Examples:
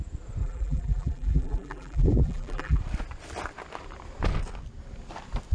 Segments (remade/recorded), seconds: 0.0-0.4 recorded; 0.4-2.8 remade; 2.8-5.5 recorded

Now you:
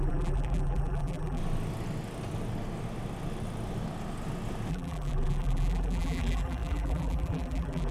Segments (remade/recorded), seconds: 0.0-1.4 remade; 1.4-4.7 recorded; 4.7-7.9 remade

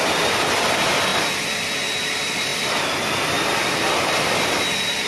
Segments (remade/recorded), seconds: 0.0-2.5 recorded; 2.5-5.1 remade

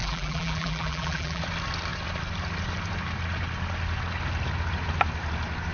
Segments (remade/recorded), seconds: 0.0-1.4 remade; 1.4-5.7 recorded

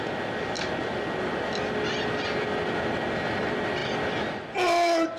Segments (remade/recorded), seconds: 0.0-5.2 recorded

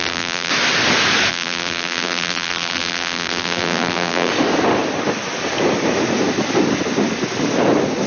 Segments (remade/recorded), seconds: 0.0-0.5 remade; 0.5-1.3 recorded; 1.3-4.3 remade; 4.3-8.1 recorded